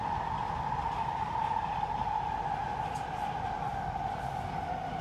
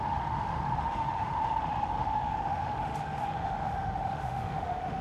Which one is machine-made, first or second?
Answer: second